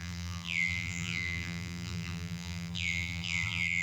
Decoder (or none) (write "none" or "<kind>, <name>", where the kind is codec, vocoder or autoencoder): vocoder, BigVGAN v2